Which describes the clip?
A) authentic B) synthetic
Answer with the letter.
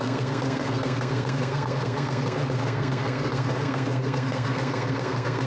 B